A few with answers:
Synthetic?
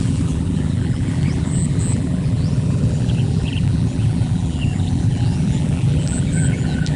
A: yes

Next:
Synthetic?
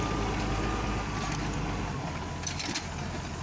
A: no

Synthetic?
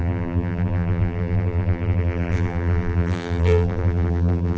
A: yes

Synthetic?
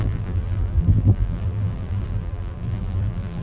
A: yes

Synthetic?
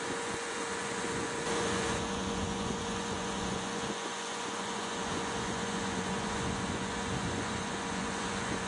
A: yes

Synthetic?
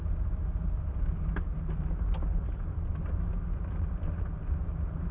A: no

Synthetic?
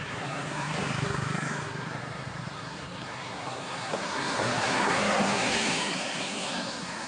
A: yes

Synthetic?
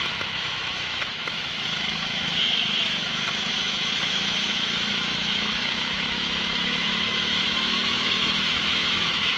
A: yes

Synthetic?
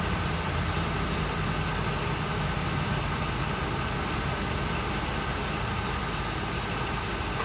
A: no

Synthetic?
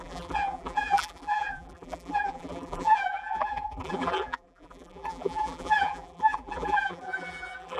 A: yes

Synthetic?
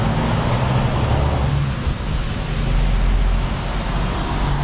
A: no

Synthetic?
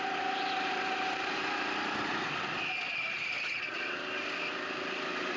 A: no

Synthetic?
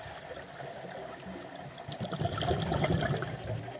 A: no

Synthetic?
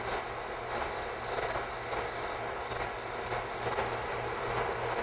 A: no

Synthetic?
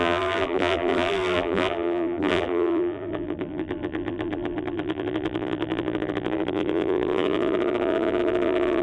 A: yes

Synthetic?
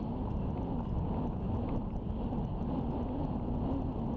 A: no